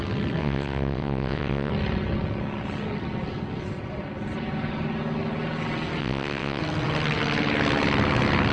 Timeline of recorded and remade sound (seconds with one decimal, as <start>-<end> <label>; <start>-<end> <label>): 0.0-0.4 recorded; 0.4-1.7 remade; 1.7-6.0 recorded; 6.0-6.6 remade; 6.6-8.5 recorded